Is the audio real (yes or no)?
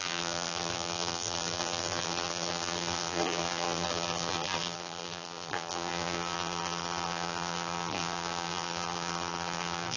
no